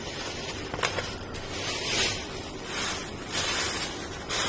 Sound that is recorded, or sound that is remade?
recorded